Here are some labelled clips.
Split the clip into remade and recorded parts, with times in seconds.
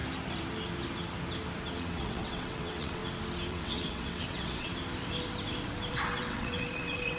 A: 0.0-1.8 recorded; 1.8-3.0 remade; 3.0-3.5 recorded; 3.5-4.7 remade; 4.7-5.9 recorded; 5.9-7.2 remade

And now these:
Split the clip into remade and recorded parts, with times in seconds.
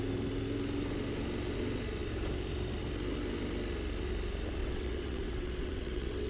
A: 0.0-4.6 recorded; 4.6-6.3 remade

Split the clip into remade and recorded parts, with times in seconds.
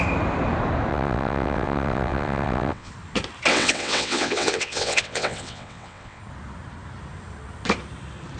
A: 0.0-0.9 recorded; 0.9-2.9 remade; 2.9-3.5 recorded; 3.5-6.2 remade; 6.2-8.4 recorded